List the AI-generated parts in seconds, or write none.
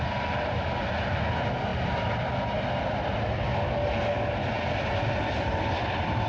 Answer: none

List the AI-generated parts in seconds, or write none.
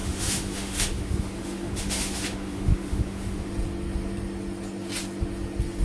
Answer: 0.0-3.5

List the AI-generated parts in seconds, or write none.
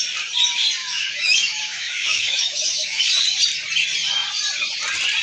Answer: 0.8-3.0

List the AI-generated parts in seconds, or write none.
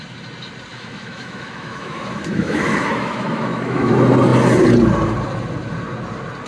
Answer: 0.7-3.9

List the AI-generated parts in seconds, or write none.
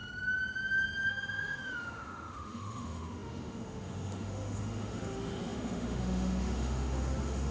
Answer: 1.1-7.5